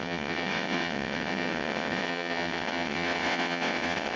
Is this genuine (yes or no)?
no